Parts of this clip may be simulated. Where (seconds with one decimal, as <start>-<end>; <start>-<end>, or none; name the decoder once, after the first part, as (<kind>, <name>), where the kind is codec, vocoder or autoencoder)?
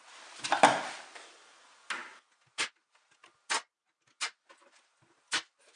none